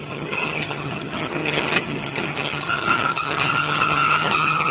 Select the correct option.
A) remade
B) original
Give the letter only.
A